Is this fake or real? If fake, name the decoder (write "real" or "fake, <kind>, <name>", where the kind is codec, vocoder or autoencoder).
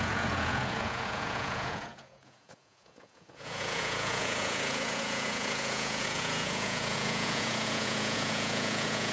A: fake, vocoder, Vocos